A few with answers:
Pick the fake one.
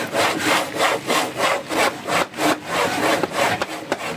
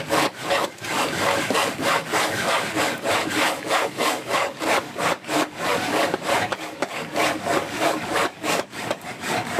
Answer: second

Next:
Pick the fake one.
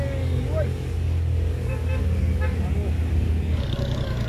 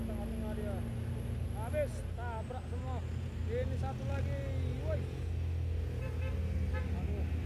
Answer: first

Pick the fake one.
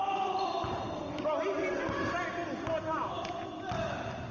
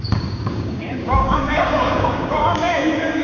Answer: second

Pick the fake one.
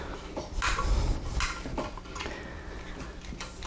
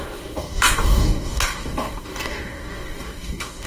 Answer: second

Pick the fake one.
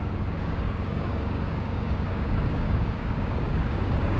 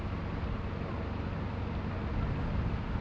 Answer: first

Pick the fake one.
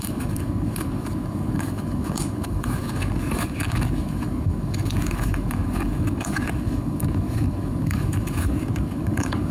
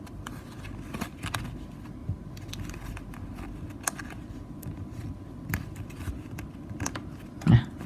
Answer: first